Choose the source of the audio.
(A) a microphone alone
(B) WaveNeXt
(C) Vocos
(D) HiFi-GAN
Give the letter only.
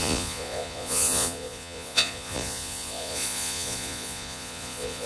C